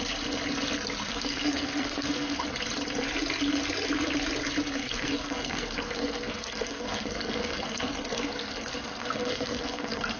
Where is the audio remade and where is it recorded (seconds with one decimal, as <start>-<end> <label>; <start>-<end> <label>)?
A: 0.0-1.1 recorded; 1.1-2.4 remade; 2.4-4.8 recorded; 4.8-10.2 remade